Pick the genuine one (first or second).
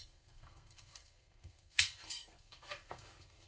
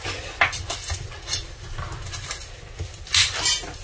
second